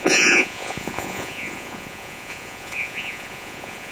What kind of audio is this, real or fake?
fake